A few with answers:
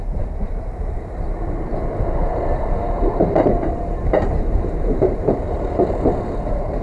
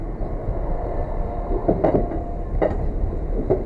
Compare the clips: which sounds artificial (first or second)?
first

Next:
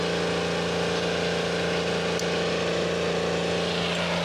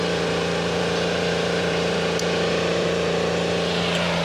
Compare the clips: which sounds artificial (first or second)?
second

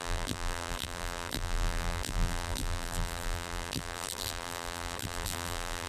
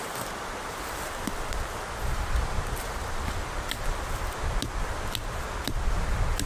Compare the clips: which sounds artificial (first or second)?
first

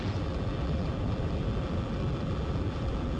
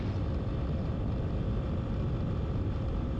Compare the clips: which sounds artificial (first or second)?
first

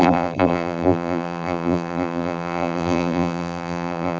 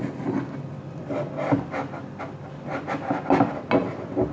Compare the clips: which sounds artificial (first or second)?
first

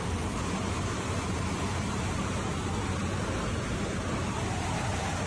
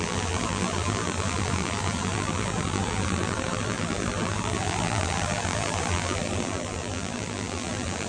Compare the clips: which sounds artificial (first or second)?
second